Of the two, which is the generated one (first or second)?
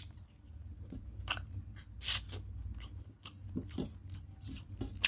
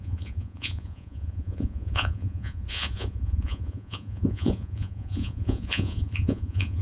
second